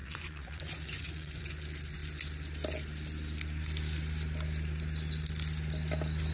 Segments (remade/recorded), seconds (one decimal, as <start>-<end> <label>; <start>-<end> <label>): 0.0-1.5 remade; 1.5-6.3 recorded